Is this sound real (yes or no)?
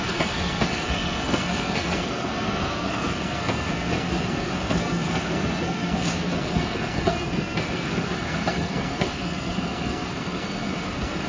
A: no